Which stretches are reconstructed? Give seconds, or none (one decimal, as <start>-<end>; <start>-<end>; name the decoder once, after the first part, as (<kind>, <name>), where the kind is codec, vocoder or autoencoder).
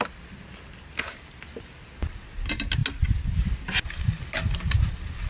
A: none